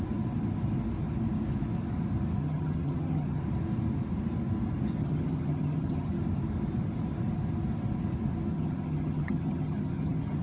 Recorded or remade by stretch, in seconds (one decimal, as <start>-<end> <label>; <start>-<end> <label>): 0.0-2.4 recorded; 2.4-3.4 remade; 3.4-5.0 recorded; 5.0-6.2 remade; 6.2-8.5 recorded; 8.5-10.4 remade